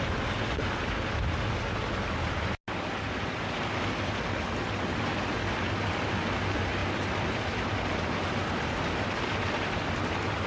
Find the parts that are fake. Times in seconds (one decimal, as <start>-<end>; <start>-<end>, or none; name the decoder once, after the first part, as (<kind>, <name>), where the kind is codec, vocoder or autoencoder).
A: none